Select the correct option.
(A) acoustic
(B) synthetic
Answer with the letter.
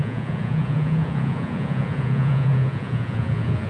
B